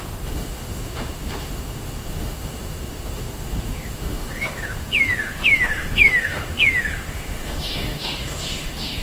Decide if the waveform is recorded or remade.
remade